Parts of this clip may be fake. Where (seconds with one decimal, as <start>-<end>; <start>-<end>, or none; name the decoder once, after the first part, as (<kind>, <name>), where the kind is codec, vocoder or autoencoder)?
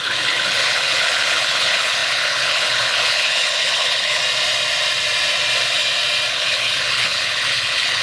0.0-4.2 (codec, HILCodec); 6.3-8.0